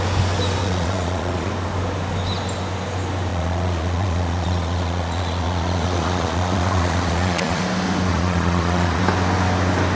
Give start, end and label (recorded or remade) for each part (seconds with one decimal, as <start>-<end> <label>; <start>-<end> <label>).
0.0-0.6 recorded; 0.6-1.5 remade; 1.5-3.3 recorded; 3.3-7.6 remade; 7.6-8.1 recorded; 8.1-9.0 remade; 9.0-10.0 recorded